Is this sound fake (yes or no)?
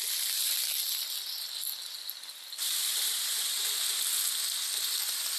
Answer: no